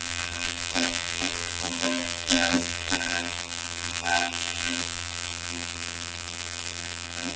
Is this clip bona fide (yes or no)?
no